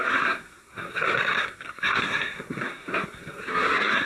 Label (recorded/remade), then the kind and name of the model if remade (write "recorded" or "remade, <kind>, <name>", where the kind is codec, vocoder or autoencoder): remade, codec, SNAC